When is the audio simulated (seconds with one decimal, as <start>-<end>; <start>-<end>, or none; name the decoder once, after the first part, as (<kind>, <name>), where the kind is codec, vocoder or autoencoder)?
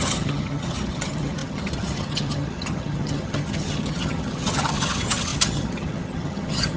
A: 0.0-6.8 (vocoder, HiFi-GAN)